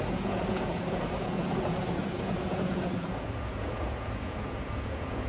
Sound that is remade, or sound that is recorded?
remade